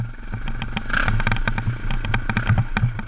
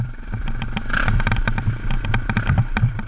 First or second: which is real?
first